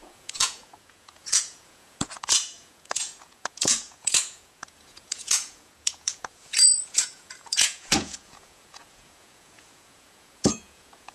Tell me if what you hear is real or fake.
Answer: fake